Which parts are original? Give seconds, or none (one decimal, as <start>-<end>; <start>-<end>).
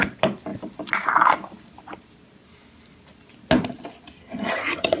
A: 0.0-4.2